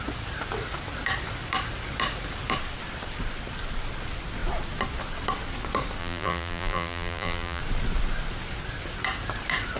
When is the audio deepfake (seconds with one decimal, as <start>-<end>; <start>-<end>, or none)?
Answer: 6.0-7.6